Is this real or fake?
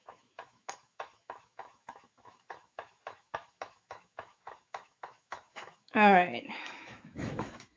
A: fake